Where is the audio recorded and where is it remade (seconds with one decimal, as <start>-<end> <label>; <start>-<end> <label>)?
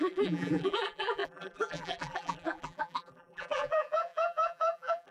0.0-5.1 remade